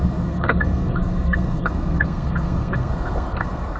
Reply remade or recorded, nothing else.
remade